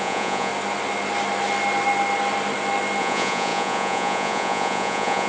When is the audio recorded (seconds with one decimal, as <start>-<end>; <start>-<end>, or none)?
0.5-3.0